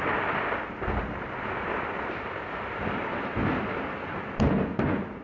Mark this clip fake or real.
real